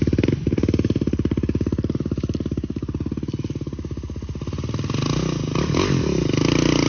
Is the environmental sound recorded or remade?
recorded